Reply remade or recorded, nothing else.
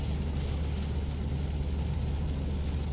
recorded